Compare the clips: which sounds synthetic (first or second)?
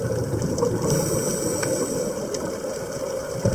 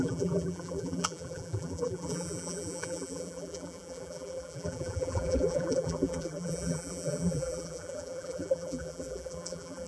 second